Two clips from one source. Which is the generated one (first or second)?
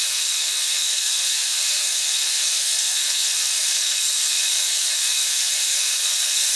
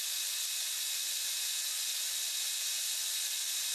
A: first